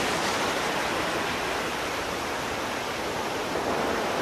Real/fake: real